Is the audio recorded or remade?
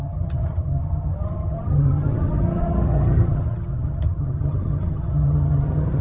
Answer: remade